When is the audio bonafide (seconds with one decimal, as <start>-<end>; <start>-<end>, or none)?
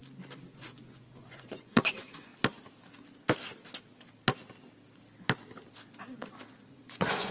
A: 0.0-0.6; 2.3-6.7